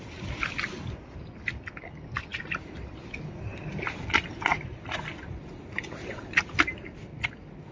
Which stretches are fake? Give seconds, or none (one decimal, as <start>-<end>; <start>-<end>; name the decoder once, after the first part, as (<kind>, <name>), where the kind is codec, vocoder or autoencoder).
none